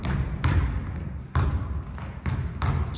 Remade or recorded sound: recorded